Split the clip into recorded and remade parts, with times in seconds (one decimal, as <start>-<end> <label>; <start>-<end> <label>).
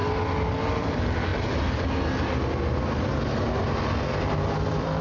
0.0-0.8 recorded; 0.8-1.3 remade; 1.3-4.3 recorded; 4.3-5.0 remade